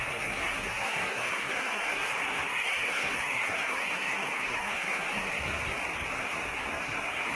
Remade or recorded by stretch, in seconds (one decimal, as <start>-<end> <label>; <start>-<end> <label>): 0.0-5.6 remade; 5.6-6.1 recorded; 6.1-7.4 remade